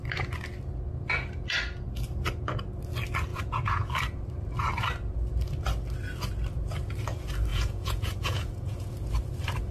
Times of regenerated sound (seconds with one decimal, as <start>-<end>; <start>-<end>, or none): 3.3-3.9; 7.5-8.9